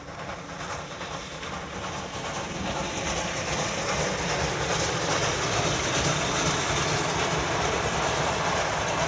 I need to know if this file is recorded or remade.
recorded